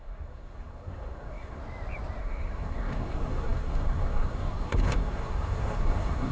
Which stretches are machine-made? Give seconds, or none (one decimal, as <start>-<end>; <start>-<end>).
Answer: 0.0-1.6; 2.2-6.3